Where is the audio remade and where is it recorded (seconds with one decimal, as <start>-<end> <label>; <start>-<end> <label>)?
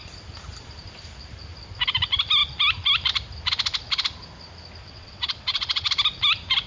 0.0-4.8 recorded; 4.8-5.9 remade; 5.9-6.7 recorded